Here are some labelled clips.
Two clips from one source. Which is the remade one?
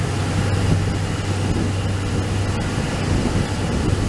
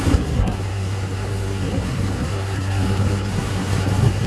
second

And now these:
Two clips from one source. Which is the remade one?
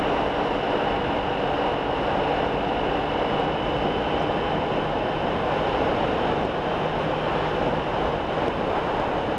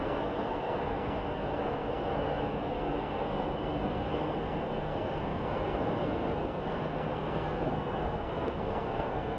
second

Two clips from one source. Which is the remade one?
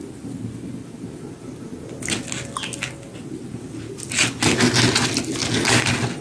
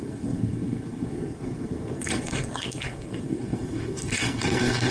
second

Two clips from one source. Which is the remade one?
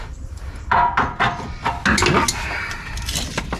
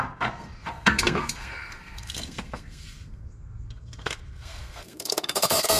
second